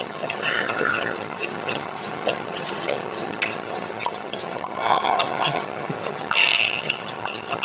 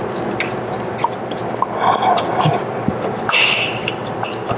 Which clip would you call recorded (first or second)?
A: second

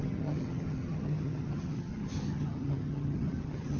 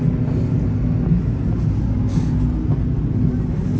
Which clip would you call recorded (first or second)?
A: second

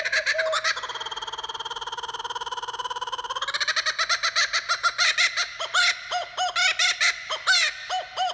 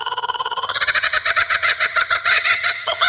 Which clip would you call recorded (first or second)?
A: first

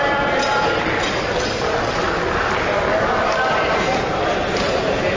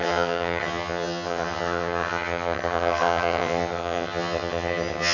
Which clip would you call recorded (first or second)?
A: first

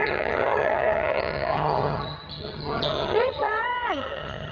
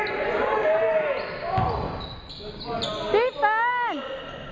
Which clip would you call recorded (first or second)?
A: second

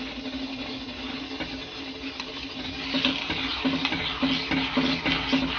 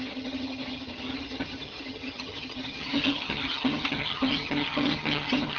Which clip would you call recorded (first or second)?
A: first